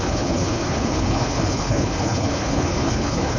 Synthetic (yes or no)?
yes